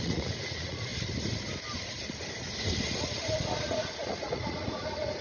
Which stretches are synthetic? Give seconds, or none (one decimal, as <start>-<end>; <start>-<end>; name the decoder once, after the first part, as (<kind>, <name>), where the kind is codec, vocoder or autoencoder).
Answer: 0.0-0.9 (vocoder, Vocos); 3.6-5.2